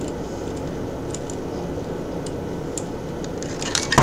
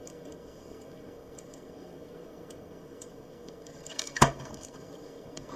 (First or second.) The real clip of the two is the first